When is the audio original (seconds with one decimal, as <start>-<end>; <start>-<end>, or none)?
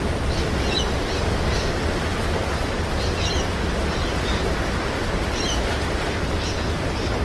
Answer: 0.0-7.2